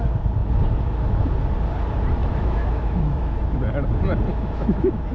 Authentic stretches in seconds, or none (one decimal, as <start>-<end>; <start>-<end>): 0.0-2.2; 3.6-4.3

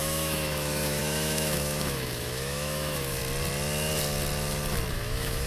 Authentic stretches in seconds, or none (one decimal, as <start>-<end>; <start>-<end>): 3.2-4.9

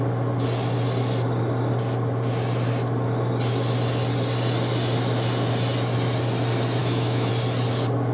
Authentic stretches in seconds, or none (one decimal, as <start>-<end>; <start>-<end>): 0.0-6.8; 7.3-8.1

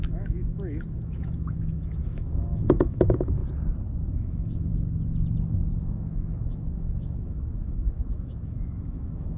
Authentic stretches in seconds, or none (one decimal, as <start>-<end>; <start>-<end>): 3.4-4.1; 4.7-5.7

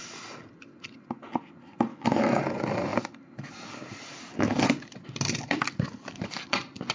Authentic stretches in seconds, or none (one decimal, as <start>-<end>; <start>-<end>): 0.0-1.9; 2.4-6.9

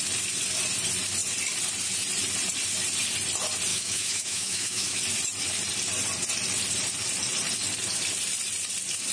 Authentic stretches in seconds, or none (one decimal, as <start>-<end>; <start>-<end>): 0.0-3.7; 5.0-9.1

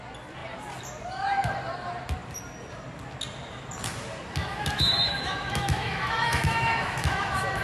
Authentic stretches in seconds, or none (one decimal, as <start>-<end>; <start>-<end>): 0.0-4.4